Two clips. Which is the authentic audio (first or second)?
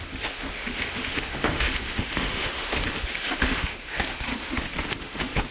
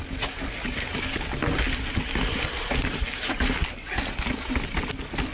second